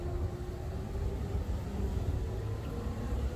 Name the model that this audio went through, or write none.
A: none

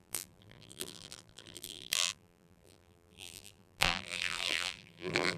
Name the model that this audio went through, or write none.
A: vocoder, BigVGAN v2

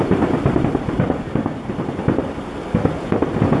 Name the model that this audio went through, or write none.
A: none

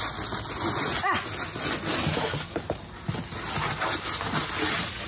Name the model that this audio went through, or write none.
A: none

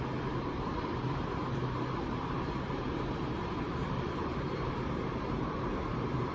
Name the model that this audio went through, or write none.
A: vocoder, BigVGAN v2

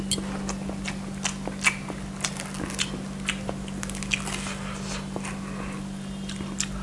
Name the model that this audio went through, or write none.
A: none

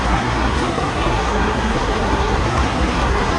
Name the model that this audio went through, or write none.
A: codec, SNAC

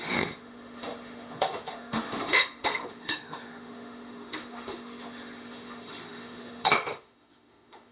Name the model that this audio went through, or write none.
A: autoencoder, DAC-VAE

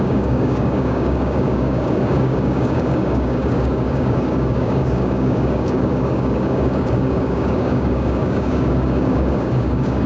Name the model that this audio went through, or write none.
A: codec, DAC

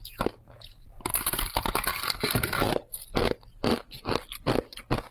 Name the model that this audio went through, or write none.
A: none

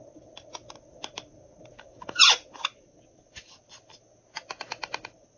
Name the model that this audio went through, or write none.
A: none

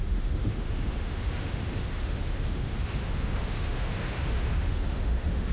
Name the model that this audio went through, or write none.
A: autoencoder, DAC-VAE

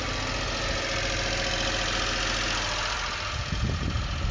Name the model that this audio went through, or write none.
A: none